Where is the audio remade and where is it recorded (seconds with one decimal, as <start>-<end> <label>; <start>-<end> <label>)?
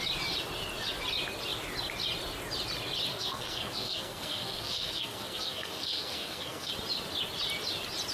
0.0-3.1 recorded; 3.1-6.7 remade; 6.7-8.1 recorded